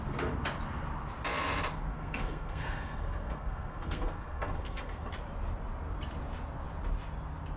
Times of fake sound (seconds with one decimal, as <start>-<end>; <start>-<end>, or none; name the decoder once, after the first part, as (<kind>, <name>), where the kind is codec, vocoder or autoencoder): 1.9-5.1 (codec, SNAC)